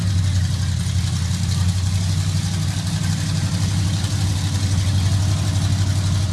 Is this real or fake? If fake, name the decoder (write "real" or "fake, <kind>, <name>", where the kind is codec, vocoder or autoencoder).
real